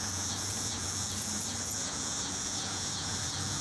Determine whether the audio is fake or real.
fake